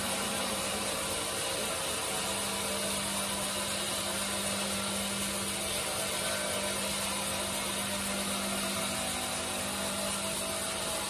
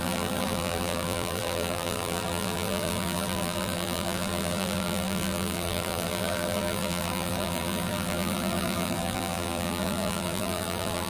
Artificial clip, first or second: second